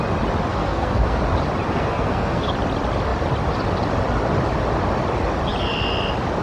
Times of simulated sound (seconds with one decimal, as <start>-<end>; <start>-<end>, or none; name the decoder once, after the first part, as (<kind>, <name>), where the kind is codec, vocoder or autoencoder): 0.5-1.2 (codec, SNAC); 1.7-2.5